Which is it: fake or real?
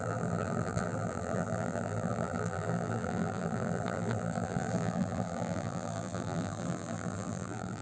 fake